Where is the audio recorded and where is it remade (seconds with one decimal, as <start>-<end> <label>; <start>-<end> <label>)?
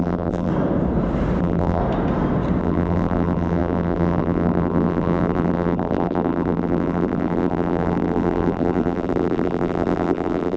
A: 0.0-0.5 remade; 0.5-1.4 recorded; 1.4-1.8 remade; 1.8-2.6 recorded; 2.6-10.6 remade